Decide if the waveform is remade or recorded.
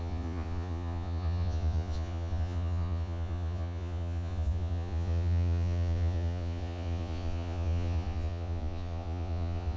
remade